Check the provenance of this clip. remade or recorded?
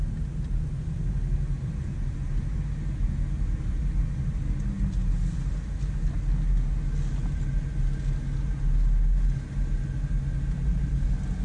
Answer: recorded